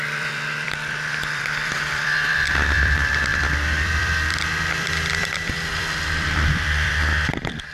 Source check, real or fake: fake